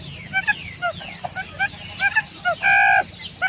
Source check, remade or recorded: recorded